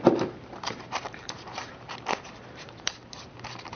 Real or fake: fake